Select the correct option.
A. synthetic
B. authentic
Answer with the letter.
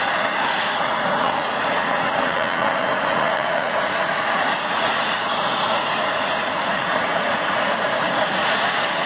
A